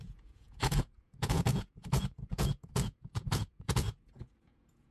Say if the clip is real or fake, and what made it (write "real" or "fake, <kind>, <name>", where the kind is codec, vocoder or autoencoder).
fake, vocoder, Vocos